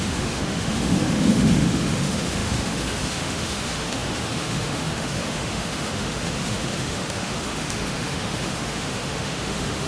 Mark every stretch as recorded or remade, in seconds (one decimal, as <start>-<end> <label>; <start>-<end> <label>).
0.0-9.9 remade